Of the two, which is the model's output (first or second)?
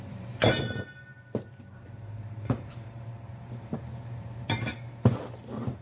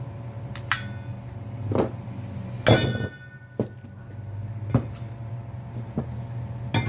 first